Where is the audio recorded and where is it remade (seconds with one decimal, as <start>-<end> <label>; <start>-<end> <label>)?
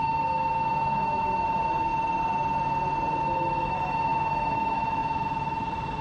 0.0-1.9 remade; 1.9-3.2 recorded; 3.2-6.0 remade